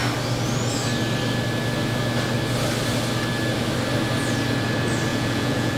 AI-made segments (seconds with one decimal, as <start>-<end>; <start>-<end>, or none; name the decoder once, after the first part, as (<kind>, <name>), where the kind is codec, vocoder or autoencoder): 5.1-5.8 (vocoder, Vocos)